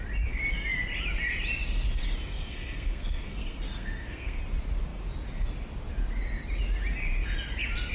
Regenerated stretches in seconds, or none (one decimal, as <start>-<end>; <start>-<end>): 2.3-4.4